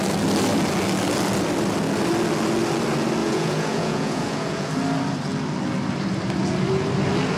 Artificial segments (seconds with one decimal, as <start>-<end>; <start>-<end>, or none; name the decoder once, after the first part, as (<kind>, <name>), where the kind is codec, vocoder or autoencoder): 3.2-4.7 (vocoder, Vocos)